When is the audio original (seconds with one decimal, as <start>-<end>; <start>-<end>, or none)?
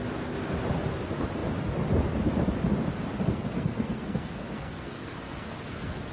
0.0-3.3